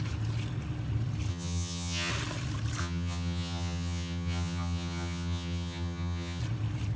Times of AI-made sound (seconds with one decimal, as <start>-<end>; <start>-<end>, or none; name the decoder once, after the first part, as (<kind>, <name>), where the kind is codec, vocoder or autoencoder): 1.3-2.1 (vocoder, HiFi-GAN); 2.8-6.4